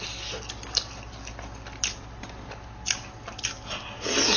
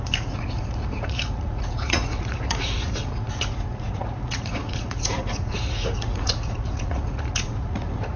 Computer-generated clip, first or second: second